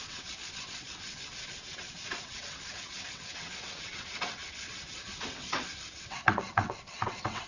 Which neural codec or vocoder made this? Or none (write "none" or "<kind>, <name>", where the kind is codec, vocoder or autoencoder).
vocoder, WaveNeXt